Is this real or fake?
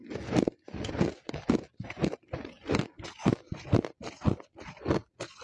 real